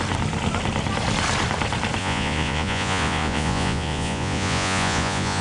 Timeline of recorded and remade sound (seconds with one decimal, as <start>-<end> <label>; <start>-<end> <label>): 0.0-2.0 recorded; 2.0-5.4 remade